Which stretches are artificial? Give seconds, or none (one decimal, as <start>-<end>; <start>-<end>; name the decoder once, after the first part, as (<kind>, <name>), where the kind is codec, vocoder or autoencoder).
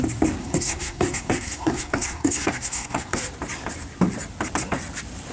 0.4-3.2 (codec, SNAC)